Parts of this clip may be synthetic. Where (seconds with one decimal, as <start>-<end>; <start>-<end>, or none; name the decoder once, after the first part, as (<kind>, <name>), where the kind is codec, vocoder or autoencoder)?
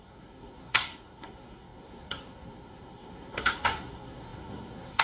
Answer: 0.0-5.0 (codec, SNAC)